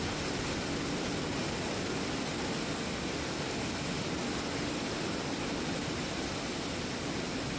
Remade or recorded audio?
recorded